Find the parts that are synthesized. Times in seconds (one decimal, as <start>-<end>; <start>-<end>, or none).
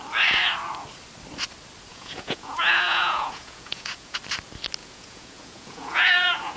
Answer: 1.9-4.2; 4.8-6.6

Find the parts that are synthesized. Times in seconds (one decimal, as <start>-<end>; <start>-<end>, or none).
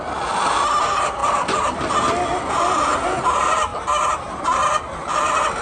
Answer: 0.0-3.7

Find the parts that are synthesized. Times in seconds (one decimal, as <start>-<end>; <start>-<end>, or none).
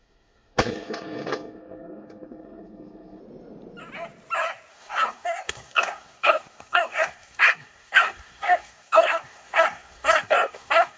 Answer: 0.0-3.2; 4.7-11.0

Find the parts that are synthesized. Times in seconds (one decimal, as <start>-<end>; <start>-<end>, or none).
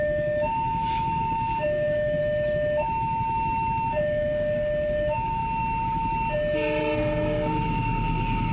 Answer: 0.0-2.2; 3.9-5.4; 6.8-8.5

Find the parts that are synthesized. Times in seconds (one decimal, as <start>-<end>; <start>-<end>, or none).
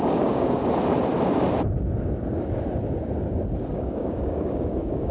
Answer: 0.0-0.6; 3.7-5.1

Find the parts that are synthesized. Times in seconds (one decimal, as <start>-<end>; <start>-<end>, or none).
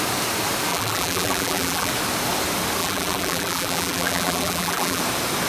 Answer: 0.7-1.9; 2.8-5.0